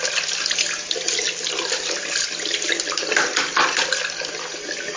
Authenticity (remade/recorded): recorded